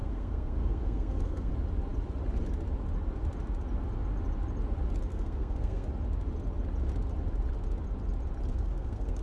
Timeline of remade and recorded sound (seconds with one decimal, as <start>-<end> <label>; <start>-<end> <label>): 0.0-1.5 remade; 1.5-5.1 recorded; 5.1-5.9 remade; 5.9-8.5 recorded; 8.5-9.2 remade